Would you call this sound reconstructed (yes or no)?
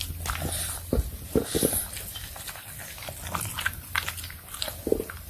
no